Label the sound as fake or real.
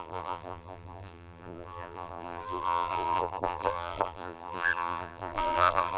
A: fake